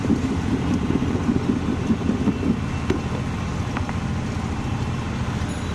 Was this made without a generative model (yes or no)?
yes